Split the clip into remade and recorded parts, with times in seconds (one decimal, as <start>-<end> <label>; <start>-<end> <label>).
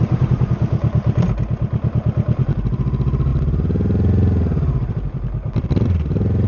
0.0-6.5 recorded